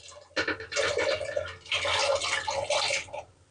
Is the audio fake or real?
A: real